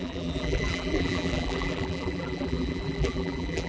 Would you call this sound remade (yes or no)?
yes